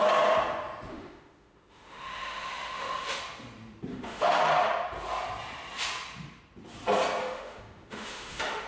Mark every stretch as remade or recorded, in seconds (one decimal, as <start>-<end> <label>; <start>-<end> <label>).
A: 0.0-0.9 recorded; 0.9-3.2 remade; 3.2-3.9 recorded; 3.9-4.4 remade; 4.4-7.2 recorded; 7.2-8.7 remade